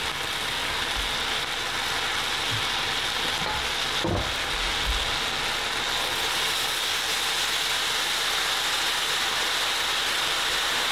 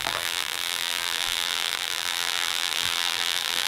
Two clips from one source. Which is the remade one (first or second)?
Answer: second